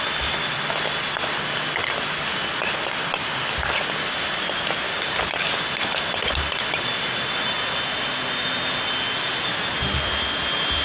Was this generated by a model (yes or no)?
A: no